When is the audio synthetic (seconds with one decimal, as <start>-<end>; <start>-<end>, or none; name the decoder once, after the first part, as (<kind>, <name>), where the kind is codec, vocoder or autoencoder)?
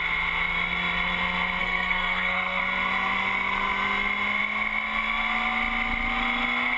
1.6-2.6 (codec, SNAC)